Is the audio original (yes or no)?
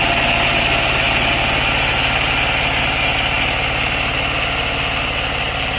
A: yes